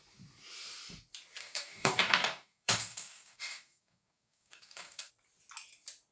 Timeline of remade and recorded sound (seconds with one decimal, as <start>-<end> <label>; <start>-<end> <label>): 0.0-1.4 recorded; 1.4-5.1 remade; 5.1-6.1 recorded